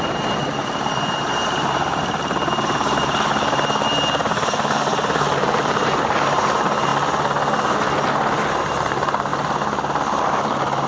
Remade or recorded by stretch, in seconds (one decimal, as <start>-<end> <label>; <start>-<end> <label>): 0.0-6.9 remade; 6.9-8.8 recorded; 8.8-9.3 remade; 9.3-10.2 recorded; 10.2-10.9 remade